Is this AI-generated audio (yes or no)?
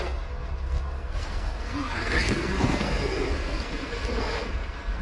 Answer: yes